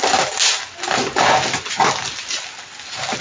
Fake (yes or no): no